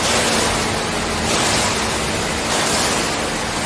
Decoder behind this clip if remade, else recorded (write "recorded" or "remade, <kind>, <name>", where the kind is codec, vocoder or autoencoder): recorded